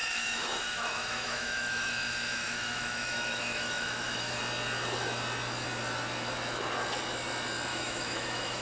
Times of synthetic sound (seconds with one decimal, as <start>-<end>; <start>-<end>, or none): 0.0-4.4; 7.7-8.6